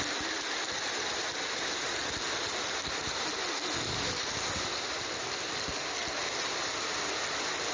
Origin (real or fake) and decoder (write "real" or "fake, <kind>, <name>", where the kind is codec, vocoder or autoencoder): real